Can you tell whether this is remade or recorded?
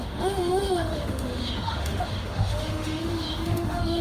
remade